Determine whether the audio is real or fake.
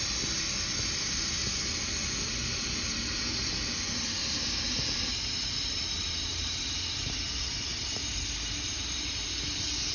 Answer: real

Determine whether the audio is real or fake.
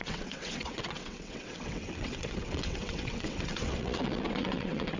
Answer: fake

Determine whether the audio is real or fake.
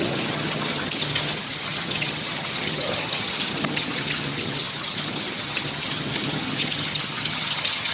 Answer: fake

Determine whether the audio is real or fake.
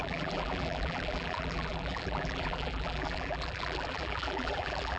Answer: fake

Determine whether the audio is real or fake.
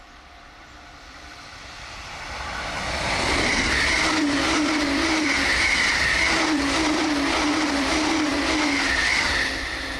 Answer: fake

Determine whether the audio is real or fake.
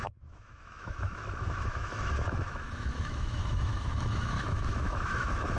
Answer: fake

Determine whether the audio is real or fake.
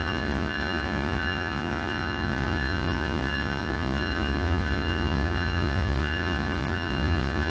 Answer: fake